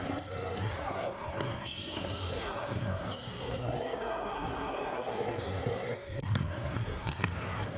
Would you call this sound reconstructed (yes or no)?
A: yes